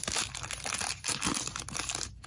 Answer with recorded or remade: recorded